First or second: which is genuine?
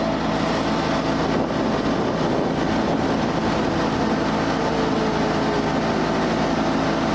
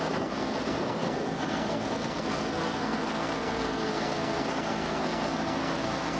first